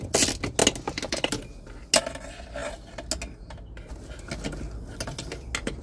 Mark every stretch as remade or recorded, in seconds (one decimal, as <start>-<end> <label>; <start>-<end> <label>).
0.0-5.8 recorded